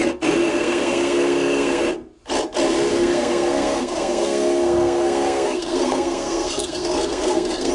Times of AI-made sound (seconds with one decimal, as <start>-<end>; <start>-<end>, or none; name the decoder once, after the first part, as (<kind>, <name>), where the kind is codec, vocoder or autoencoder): 0.5-1.8 (codec, SNAC); 2.9-7.7